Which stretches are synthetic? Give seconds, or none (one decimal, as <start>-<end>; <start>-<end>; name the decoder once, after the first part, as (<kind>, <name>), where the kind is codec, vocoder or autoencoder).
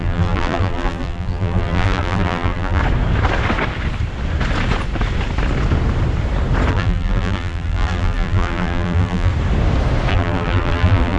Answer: 0.0-2.8 (vocoder, BigVGAN v2); 6.7-9.3; 10.1-11.2